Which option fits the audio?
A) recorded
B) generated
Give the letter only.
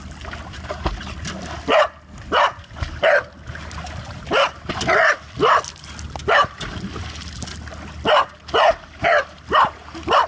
A